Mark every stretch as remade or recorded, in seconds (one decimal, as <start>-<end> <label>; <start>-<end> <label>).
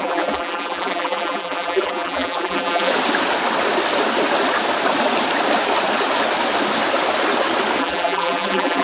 0.0-2.9 remade; 2.9-7.8 recorded; 7.8-8.8 remade